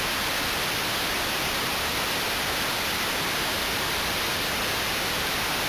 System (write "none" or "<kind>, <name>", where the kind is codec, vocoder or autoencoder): none